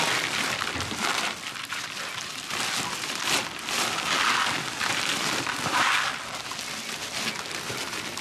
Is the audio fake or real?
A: fake